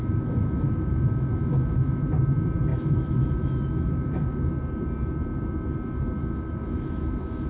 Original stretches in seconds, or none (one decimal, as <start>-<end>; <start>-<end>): 2.2-2.7; 4.5-6.2